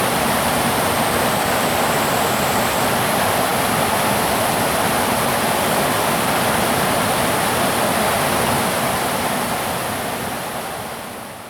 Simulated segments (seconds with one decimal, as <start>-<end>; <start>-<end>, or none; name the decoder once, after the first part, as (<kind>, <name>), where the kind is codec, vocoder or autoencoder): none